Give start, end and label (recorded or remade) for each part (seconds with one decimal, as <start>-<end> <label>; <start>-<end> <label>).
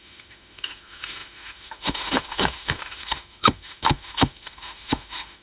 0.0-5.4 remade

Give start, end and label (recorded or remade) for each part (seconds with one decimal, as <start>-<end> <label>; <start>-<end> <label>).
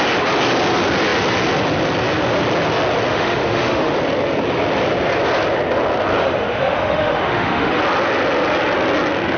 0.0-3.1 recorded; 3.1-3.9 remade; 3.9-6.2 recorded; 6.2-7.8 remade; 7.8-9.4 recorded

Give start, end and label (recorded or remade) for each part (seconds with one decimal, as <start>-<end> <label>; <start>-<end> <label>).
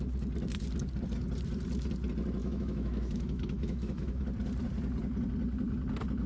0.0-2.4 recorded; 2.4-4.2 remade; 4.2-6.3 recorded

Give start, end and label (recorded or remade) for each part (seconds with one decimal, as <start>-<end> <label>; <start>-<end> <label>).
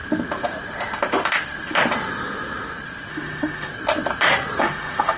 0.0-3.1 recorded; 3.1-3.7 remade; 3.7-4.6 recorded; 4.6-5.2 remade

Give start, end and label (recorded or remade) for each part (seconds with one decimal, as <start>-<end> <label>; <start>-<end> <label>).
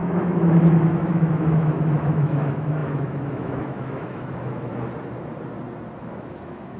0.0-4.7 remade; 4.7-6.0 recorded; 6.0-6.8 remade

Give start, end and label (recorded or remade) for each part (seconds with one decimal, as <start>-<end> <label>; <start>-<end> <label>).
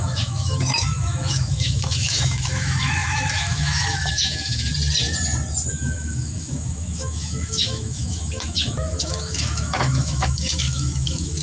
0.0-4.7 remade; 4.7-5.7 recorded; 5.7-11.4 remade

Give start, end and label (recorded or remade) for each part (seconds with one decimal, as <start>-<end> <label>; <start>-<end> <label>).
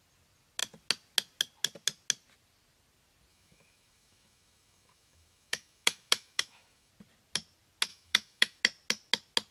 0.0-3.3 recorded; 3.3-6.9 remade; 6.9-7.9 recorded; 7.9-8.6 remade; 8.6-9.5 recorded